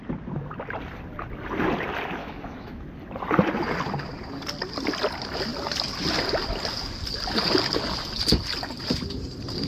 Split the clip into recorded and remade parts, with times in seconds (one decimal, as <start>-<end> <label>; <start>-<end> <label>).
0.0-2.2 recorded; 2.2-2.9 remade; 2.9-9.7 recorded